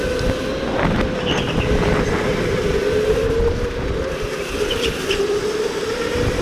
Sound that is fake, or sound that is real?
real